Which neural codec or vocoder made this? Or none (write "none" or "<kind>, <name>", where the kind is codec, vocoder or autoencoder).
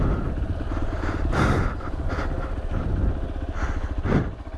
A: none